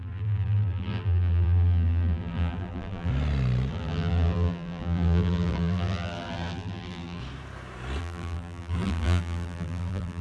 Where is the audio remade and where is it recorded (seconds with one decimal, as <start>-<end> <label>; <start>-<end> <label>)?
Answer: 0.0-3.1 remade; 3.1-3.7 recorded; 3.7-7.2 remade; 7.2-8.0 recorded; 8.0-10.2 remade